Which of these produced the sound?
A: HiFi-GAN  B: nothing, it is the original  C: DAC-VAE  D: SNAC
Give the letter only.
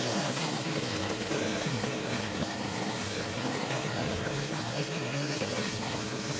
D